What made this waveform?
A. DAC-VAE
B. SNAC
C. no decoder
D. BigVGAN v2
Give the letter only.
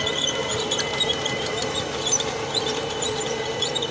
D